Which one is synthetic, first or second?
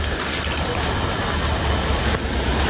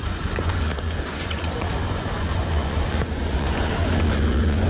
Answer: second